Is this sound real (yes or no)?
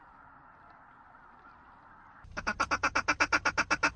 yes